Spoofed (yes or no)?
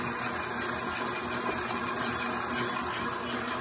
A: no